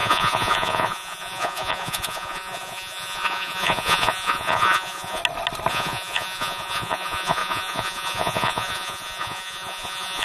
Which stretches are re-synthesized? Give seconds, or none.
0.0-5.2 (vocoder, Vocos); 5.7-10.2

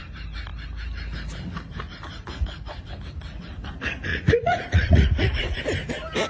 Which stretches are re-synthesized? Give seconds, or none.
4.1-5.6 (vocoder, Vocos)

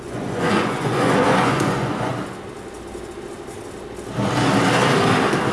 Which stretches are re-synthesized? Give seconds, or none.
0.0-2.1 (vocoder, Vocos)

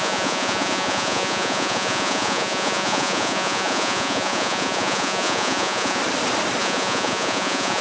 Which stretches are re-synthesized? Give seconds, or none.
0.0-6.0 (vocoder, Vocos); 6.6-7.8